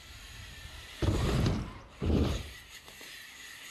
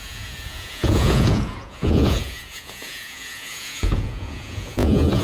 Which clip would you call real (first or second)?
first